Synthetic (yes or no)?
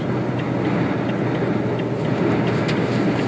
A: no